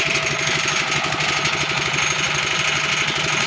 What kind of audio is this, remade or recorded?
recorded